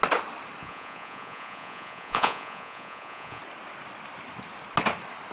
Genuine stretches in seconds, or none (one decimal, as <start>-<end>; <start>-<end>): 0.0-0.6; 3.4-5.3